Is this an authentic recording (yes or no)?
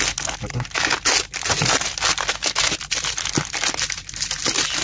yes